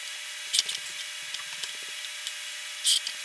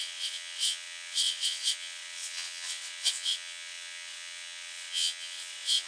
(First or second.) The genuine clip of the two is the first